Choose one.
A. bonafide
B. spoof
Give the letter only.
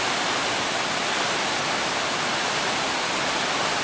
A